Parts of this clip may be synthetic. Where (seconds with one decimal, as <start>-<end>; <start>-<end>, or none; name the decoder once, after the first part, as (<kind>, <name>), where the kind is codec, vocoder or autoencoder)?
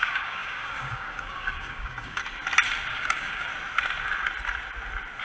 0.0-2.2 (codec, DAC); 2.9-3.5